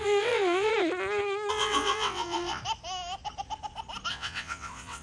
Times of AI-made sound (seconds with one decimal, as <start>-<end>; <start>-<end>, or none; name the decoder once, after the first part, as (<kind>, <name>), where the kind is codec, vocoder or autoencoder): 0.0-0.7 (vocoder, WaveNeXt); 1.5-2.6; 4.1-5.0